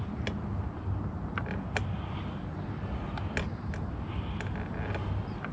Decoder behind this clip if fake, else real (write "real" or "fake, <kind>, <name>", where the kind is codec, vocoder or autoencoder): real